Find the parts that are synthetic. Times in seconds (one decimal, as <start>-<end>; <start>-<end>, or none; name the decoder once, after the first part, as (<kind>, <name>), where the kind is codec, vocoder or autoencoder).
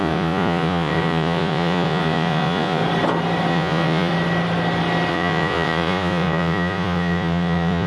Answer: 0.0-2.8 (vocoder, Vocos); 3.5-4.1; 5.1-7.9